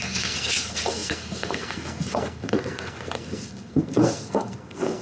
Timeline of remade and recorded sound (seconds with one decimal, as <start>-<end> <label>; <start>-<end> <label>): 0.0-5.0 remade